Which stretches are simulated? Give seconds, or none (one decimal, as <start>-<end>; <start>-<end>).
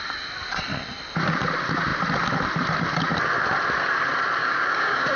4.4-5.2